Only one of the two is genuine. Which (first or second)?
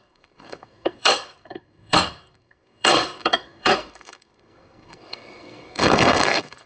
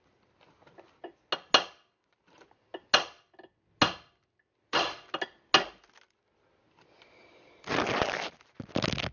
second